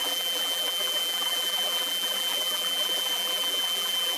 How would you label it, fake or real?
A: fake